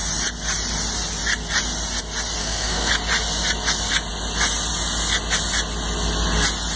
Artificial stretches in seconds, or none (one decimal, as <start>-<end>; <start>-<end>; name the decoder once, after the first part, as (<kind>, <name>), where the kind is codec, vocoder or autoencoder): 2.4-2.9 (codec, SNAC)